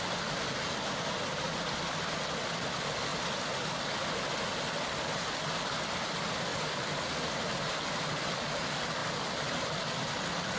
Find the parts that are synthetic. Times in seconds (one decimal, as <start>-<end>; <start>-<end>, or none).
none